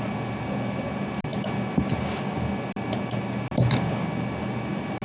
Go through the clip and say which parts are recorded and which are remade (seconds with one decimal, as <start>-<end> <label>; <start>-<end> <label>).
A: 0.0-5.0 recorded